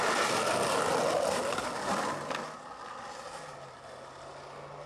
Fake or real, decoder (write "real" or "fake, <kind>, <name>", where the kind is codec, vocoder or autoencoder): real